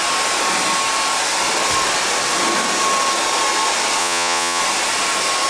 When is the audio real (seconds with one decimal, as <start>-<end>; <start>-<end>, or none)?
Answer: 0.0-4.0; 4.6-5.5